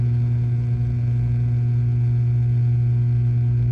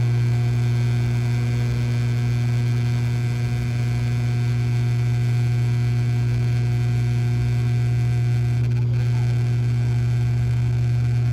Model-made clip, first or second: first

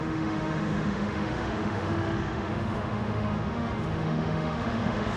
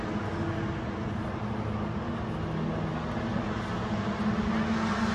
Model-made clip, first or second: first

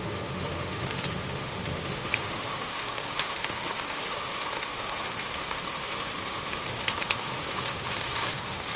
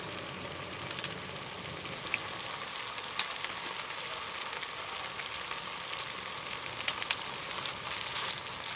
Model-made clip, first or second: first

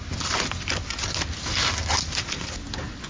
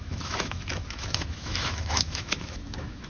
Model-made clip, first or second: second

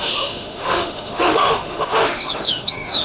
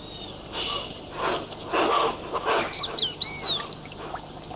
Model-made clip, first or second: first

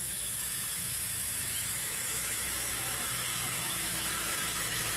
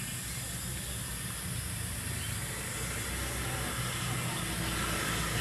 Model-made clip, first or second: first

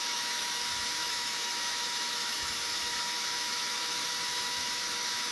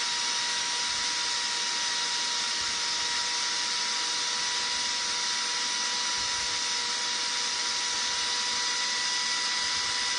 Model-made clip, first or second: first